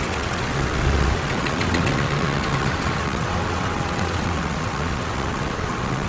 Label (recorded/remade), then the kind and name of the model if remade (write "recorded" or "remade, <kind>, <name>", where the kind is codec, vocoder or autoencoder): remade, vocoder, WaveNeXt